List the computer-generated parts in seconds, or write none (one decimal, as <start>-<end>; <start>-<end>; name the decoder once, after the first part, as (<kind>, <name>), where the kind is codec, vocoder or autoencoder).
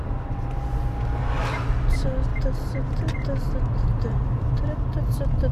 none